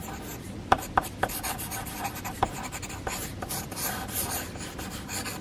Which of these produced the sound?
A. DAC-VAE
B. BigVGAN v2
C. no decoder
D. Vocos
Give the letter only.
C